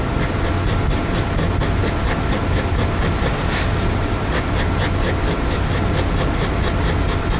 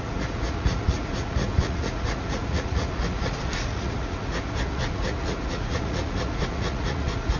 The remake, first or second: second